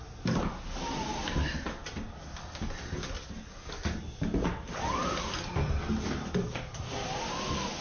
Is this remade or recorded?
recorded